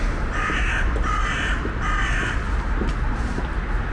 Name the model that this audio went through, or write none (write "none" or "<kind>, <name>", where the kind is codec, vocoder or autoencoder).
none